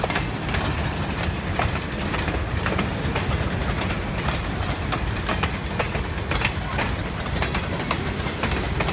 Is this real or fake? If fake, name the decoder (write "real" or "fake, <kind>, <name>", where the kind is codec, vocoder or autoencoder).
real